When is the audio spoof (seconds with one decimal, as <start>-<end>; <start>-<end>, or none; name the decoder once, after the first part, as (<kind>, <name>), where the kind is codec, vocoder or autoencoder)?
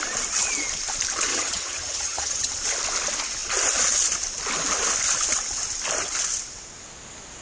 1.3-2.5 (vocoder, HiFi-GAN)